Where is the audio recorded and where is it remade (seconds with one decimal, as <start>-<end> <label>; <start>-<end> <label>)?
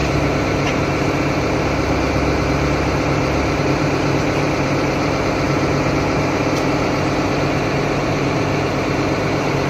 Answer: 0.0-9.7 remade